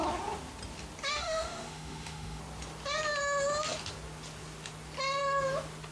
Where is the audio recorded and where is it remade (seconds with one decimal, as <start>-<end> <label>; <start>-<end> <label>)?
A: 0.0-1.1 recorded; 1.1-2.4 remade; 2.4-5.9 recorded